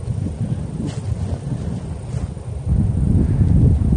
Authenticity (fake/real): real